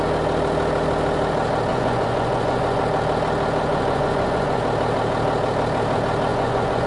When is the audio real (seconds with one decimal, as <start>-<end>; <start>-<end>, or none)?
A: 0.0-1.7; 2.8-3.7; 4.6-6.3